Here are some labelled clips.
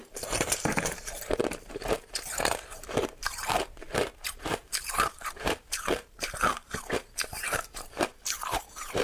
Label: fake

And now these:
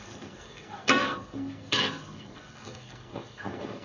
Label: fake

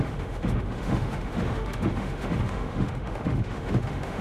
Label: fake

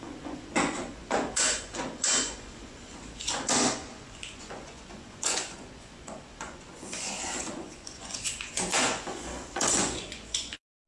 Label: fake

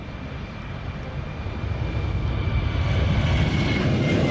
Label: real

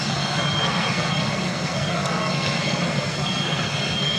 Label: fake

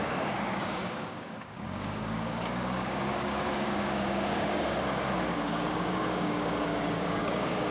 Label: fake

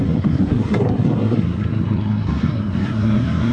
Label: fake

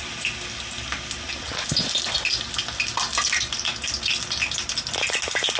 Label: real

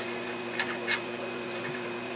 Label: fake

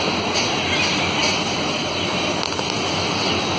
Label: real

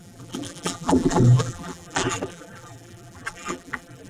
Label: fake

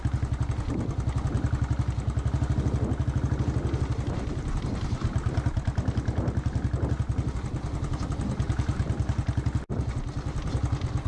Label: real